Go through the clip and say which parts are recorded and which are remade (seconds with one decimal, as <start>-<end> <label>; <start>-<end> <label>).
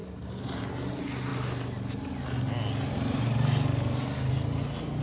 0.0-5.0 recorded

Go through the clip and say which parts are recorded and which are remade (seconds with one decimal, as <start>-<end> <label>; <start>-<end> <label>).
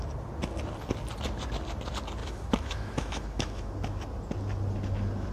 0.0-2.2 recorded; 2.2-3.7 remade; 3.7-5.3 recorded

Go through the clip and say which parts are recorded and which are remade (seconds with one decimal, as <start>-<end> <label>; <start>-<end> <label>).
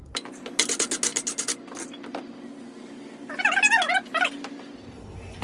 0.0-5.4 recorded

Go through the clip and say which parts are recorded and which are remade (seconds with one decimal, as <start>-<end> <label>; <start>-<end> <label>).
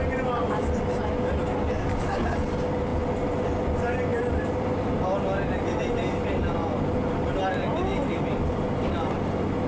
0.0-4.1 recorded; 4.1-4.9 remade; 4.9-9.7 recorded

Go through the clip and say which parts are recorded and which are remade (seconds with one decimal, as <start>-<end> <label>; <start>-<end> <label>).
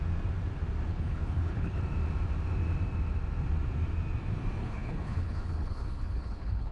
0.0-0.9 recorded; 0.9-1.8 remade; 1.8-4.6 recorded; 4.6-6.7 remade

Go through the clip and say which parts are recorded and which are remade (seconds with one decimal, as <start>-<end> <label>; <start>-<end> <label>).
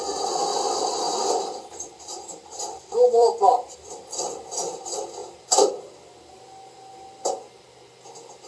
0.0-0.5 recorded; 0.5-4.1 remade; 4.1-5.2 recorded; 5.2-5.7 remade; 5.7-8.5 recorded